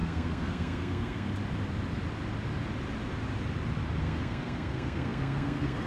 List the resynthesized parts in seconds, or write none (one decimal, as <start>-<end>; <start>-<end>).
0.0-1.3; 4.0-5.9